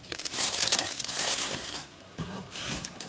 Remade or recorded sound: remade